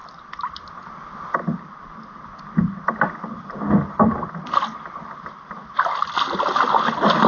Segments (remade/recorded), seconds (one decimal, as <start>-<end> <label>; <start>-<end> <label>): 0.0-7.3 recorded